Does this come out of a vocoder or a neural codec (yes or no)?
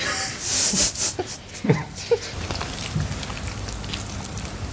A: no